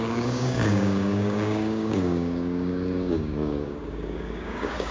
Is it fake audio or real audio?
fake